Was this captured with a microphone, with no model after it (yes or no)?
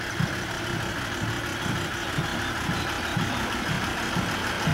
yes